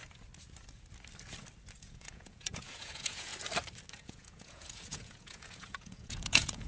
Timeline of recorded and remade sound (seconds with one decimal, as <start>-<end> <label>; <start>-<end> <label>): 0.0-1.8 recorded; 1.8-3.3 remade; 3.3-3.9 recorded; 3.9-6.7 remade